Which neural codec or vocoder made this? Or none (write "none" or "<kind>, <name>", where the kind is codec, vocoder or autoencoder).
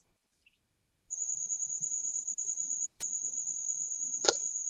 vocoder, BigVGAN v2